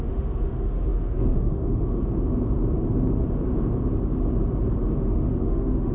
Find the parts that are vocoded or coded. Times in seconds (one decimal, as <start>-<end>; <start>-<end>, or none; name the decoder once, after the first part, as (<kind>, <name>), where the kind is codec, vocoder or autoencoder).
0.0-2.0 (autoencoder, DAC-VAE); 5.0-5.9